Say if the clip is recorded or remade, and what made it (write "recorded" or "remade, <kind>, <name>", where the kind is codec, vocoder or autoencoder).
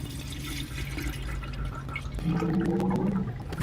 recorded